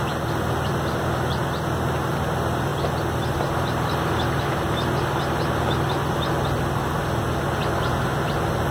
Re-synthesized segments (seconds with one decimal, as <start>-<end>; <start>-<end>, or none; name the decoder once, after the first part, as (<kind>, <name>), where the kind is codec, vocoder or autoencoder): none